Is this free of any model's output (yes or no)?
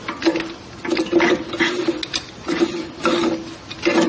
yes